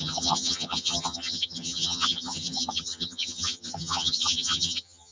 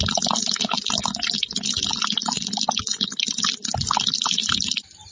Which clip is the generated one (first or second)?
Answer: first